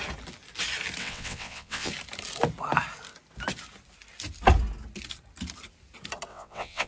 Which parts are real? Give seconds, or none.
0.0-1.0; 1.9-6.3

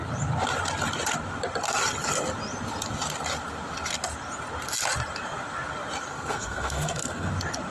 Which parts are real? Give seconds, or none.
0.0-6.1; 7.3-7.7

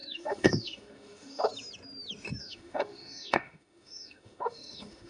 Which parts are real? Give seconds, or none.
1.5-2.4

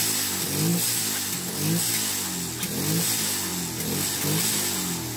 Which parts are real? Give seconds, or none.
0.0-5.2

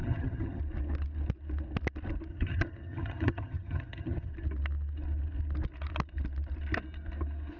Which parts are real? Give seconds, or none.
0.6-2.3; 4.3-7.6